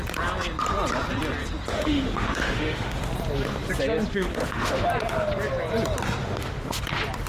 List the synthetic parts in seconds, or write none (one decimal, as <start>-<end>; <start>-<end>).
1.7-3.1; 4.1-4.9; 6.2-6.8